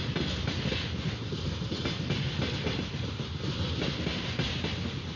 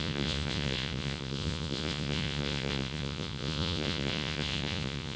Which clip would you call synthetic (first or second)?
second